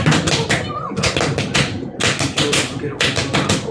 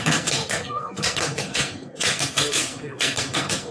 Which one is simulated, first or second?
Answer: second